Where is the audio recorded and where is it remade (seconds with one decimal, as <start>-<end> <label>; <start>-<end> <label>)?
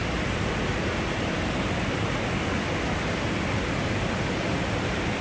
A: 0.0-5.2 recorded